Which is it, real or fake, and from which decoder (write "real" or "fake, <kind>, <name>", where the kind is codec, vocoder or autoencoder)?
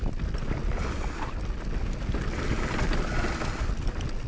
real